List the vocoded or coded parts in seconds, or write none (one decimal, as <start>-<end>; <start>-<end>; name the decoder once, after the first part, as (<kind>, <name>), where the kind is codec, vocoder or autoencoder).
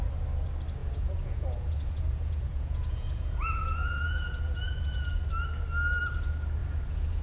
0.8-5.1 (vocoder, Vocos); 6.6-7.2